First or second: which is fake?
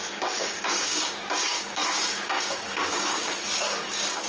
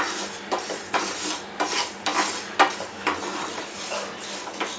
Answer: first